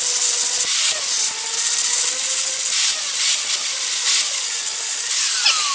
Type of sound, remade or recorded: recorded